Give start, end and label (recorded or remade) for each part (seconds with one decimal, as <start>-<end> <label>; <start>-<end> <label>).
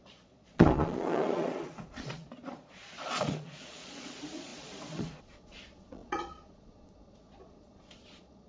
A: 0.0-8.5 remade